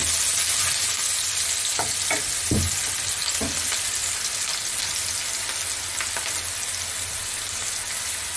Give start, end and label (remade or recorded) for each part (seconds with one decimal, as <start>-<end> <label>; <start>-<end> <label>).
0.0-8.4 recorded